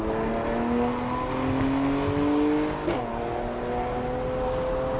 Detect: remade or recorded recorded